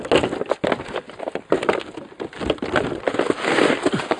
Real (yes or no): yes